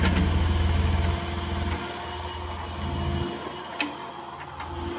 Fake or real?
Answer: real